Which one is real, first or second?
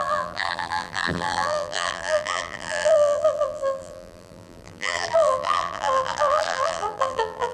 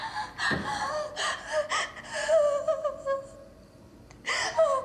second